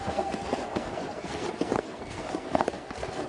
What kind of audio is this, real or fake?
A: fake